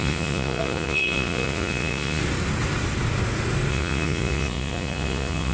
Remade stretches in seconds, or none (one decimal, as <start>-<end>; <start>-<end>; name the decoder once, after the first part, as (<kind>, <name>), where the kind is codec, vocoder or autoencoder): 0.0-2.2 (vocoder, Vocos); 3.7-5.5